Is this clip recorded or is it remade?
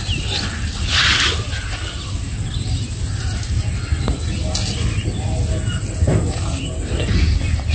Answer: recorded